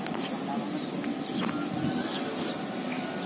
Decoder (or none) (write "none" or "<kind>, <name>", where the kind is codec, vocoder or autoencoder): none